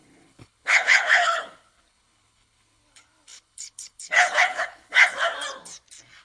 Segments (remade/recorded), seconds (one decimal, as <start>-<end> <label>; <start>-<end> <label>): 0.0-5.3 remade; 5.3-6.2 recorded